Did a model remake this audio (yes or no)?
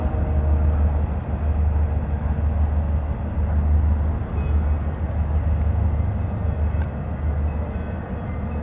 no